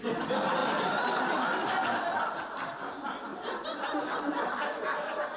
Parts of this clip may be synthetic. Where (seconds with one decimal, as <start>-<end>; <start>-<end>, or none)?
none